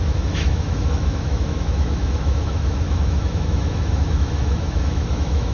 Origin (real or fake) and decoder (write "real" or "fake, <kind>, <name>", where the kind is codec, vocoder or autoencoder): fake, autoencoder, DAC-VAE